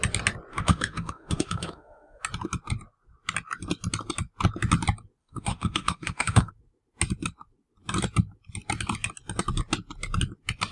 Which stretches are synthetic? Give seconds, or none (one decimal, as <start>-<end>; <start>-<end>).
0.5-2.2; 5.2-6.5